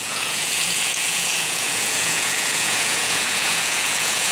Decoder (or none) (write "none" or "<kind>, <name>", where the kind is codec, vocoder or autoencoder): vocoder, Vocos